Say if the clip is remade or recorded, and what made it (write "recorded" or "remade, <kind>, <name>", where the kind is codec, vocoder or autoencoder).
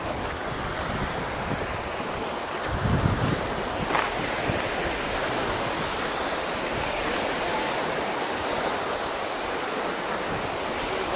recorded